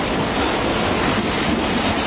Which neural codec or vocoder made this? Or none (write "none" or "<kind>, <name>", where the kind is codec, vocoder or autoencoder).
none